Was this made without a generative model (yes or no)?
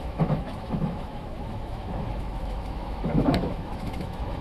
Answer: no